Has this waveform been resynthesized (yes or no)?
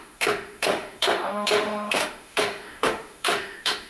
yes